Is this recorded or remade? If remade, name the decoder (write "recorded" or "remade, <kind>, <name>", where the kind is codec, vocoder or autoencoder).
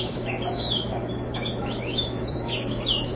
remade, autoencoder, DAC-VAE